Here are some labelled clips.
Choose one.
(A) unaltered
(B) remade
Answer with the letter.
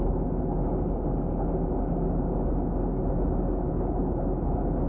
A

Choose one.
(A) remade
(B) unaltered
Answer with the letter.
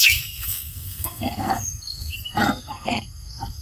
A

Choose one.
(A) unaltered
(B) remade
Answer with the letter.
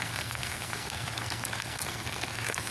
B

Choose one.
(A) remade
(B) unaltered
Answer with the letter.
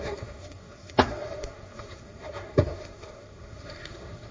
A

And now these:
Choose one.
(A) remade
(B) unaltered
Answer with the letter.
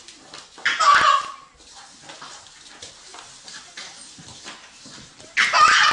B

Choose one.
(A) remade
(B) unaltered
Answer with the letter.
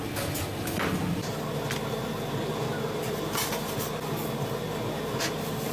B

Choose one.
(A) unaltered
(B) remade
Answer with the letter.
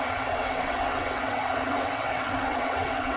B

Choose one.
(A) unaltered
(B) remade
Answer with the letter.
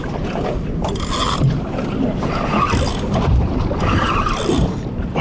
A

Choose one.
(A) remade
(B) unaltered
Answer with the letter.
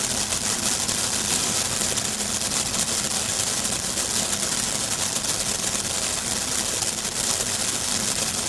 B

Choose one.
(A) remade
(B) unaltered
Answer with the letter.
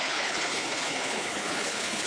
A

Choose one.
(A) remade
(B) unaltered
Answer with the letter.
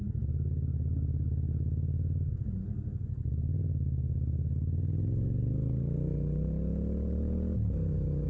B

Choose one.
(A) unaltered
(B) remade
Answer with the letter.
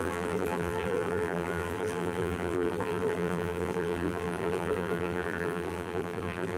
B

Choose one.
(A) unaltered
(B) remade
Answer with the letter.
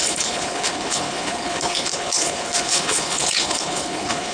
B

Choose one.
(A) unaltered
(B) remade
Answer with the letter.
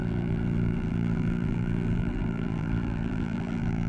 B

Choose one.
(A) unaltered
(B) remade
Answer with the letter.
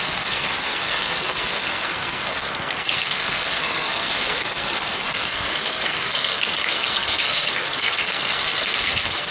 B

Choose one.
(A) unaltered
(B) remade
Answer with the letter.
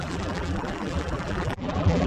B